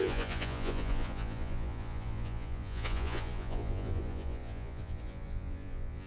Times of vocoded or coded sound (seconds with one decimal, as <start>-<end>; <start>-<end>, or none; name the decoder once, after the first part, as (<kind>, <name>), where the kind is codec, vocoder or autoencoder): 0.0-6.1 (vocoder, Vocos)